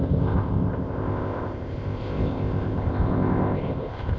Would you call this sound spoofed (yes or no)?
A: yes